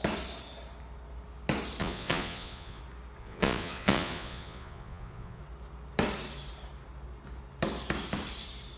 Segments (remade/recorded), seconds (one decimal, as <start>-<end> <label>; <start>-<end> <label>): 0.0-1.8 recorded; 1.8-2.8 remade; 2.8-3.2 recorded; 3.2-5.4 remade; 5.4-8.8 recorded